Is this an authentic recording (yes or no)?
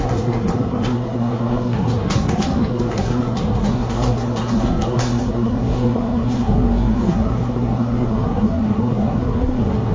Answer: no